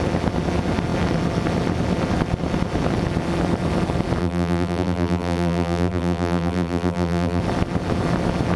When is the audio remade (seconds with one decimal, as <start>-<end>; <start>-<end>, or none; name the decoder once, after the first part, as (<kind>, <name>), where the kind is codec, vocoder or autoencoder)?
4.2-7.4 (vocoder, BigVGAN v2)